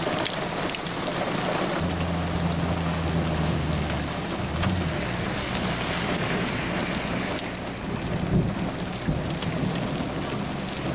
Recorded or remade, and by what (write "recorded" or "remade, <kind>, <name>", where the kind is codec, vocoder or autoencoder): recorded